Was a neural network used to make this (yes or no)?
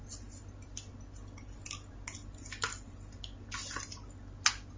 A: no